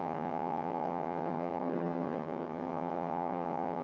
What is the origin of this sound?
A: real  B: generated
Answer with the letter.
B